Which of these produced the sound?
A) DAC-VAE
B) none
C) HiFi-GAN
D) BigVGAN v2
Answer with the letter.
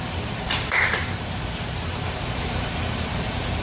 D